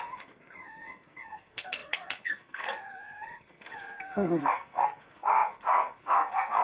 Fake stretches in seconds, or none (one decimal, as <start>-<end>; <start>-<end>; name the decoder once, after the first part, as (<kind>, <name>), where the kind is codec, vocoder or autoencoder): 0.0-6.6 (codec, SNAC)